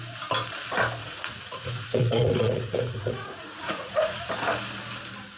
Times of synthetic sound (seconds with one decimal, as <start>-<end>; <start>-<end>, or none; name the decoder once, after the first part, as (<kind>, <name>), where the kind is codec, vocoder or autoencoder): 1.0-4.2 (vocoder, Vocos)